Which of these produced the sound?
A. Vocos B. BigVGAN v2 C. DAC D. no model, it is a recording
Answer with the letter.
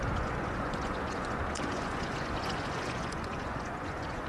A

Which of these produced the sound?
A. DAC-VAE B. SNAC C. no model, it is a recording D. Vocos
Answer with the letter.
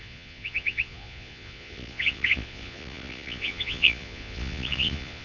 D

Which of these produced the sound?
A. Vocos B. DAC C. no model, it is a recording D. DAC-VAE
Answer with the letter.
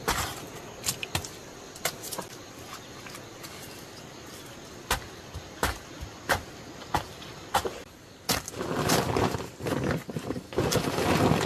C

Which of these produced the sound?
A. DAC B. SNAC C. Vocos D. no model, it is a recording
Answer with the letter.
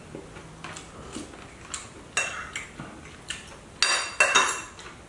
D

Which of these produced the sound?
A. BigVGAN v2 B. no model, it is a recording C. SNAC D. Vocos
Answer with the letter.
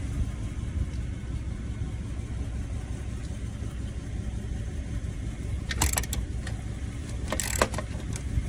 B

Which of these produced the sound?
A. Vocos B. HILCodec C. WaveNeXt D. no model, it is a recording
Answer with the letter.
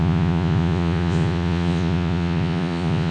A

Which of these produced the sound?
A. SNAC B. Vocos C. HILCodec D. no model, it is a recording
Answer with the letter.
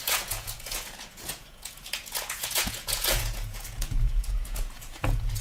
B